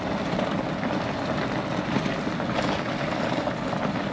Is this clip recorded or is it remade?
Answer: recorded